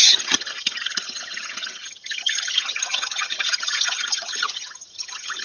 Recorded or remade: remade